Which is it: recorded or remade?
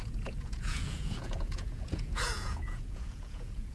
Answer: remade